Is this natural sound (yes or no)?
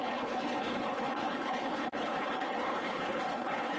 no